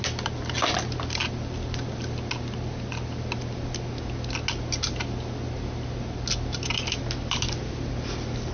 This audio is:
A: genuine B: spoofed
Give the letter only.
A